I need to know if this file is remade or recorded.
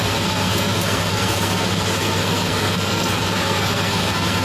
remade